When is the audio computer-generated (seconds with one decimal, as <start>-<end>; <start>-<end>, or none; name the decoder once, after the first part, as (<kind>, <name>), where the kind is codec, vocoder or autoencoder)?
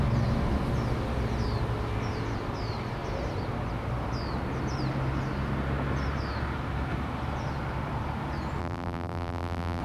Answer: 8.6-9.8 (vocoder, BigVGAN v2)